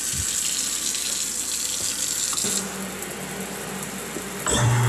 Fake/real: real